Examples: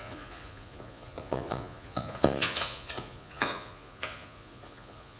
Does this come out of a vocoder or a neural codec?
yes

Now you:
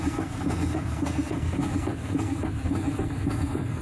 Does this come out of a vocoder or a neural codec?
yes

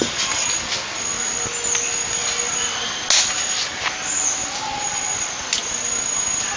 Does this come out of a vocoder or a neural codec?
no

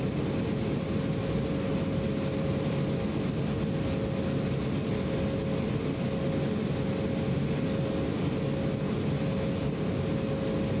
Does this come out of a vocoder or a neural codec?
no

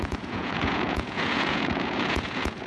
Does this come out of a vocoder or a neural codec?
yes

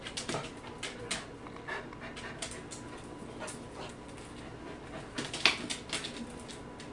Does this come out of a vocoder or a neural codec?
no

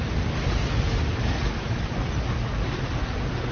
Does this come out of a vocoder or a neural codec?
no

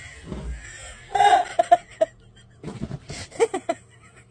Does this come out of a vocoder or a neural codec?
no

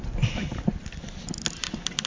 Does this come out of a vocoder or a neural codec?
no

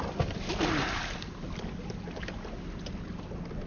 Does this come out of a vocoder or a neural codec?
no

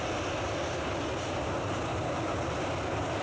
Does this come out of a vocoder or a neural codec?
no